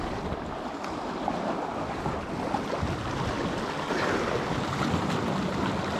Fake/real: real